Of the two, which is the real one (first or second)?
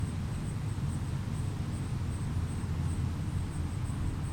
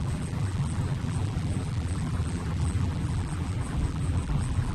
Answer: first